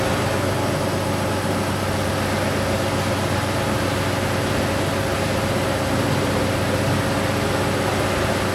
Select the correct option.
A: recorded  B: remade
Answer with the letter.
A